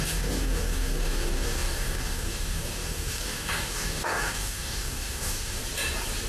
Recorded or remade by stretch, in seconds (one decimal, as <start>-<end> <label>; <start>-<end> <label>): 0.0-5.6 remade; 5.6-6.3 recorded

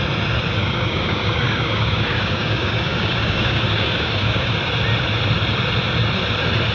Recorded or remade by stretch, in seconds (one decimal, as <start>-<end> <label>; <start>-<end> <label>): 0.0-0.6 recorded; 0.6-4.6 remade; 4.6-6.7 recorded

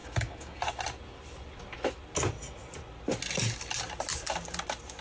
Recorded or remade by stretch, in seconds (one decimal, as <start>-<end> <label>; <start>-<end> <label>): 0.0-0.6 remade; 0.6-5.0 recorded

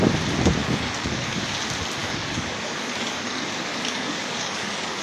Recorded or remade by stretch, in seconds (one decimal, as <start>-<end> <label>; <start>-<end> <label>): 0.0-0.6 recorded; 0.6-1.4 remade; 1.4-2.0 recorded; 2.0-5.0 remade

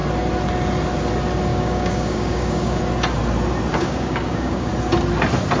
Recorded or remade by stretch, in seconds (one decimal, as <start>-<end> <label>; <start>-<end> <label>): 0.0-1.5 recorded; 1.5-2.8 remade; 2.8-3.7 recorded; 3.7-4.7 remade; 4.7-5.6 recorded